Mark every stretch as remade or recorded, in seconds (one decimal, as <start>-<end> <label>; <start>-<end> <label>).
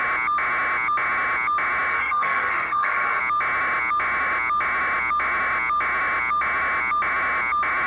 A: 0.0-1.9 recorded; 1.9-3.2 remade; 3.2-7.9 recorded